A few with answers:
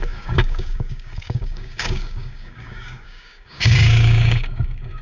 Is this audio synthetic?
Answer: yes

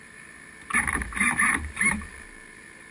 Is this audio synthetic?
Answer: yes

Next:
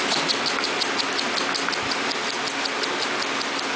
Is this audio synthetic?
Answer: no